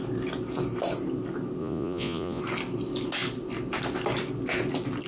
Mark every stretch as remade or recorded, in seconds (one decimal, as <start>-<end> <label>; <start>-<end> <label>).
0.0-1.6 recorded; 1.6-2.4 remade; 2.4-5.1 recorded